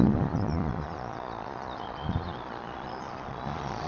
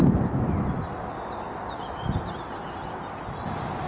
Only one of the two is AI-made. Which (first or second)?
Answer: first